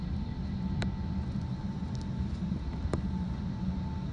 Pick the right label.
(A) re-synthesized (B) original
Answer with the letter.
A